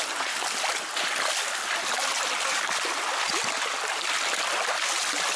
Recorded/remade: recorded